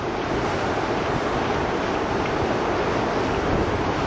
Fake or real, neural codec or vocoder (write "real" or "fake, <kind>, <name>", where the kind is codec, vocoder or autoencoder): real